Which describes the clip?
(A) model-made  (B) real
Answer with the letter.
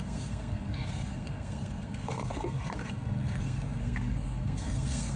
A